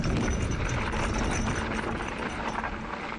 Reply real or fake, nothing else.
real